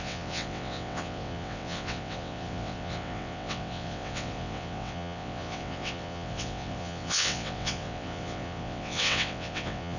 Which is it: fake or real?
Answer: fake